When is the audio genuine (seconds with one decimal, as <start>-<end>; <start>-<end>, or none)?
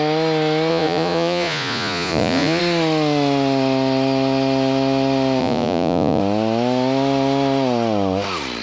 0.0-0.7; 2.6-5.4; 6.2-8.6